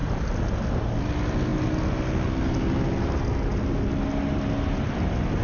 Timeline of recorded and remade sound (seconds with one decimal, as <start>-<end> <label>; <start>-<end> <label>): 0.0-5.4 recorded